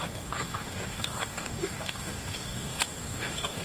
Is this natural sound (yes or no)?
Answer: no